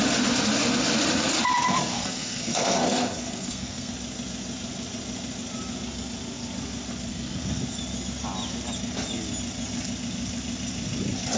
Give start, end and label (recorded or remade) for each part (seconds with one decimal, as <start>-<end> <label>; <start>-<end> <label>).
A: 0.0-1.9 recorded; 1.9-3.9 remade; 3.9-7.1 recorded; 7.1-7.6 remade; 7.6-11.4 recorded